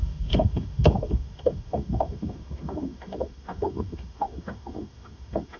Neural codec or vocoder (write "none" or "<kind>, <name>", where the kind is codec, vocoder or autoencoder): autoencoder, DAC-VAE